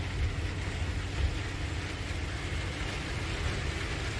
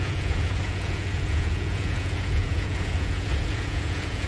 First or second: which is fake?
second